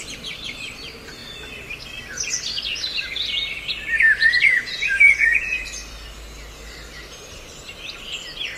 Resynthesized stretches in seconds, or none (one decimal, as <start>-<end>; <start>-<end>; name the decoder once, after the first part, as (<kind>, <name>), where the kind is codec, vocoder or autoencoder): 4.2-5.6 (vocoder, Vocos)